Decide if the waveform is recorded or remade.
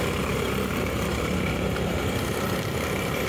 remade